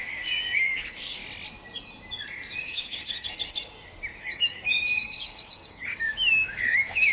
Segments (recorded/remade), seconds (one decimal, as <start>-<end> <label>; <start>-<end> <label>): 0.0-1.2 remade; 1.2-2.6 recorded; 2.6-3.0 remade; 3.0-4.2 recorded; 4.2-7.1 remade